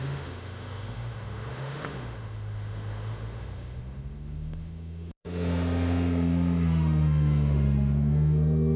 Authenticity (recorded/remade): remade